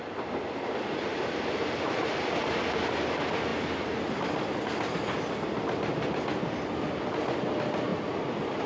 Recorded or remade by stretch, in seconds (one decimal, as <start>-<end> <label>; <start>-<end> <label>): 0.0-7.9 recorded; 7.9-8.7 remade